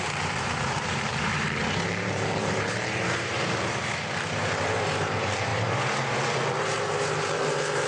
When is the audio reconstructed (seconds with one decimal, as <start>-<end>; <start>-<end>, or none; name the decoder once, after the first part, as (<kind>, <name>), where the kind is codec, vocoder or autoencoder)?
0.0-7.9 (vocoder, BigVGAN v2)